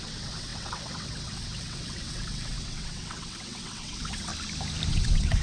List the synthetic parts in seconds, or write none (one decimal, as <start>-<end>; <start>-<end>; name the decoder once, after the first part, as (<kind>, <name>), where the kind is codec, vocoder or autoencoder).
0.0-4.3 (vocoder, WaveNeXt); 4.9-5.4